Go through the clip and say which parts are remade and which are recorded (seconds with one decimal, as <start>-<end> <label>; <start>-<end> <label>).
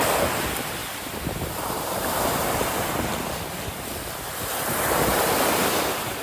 0.0-6.2 recorded